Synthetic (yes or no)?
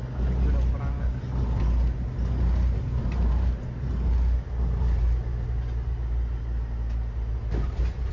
no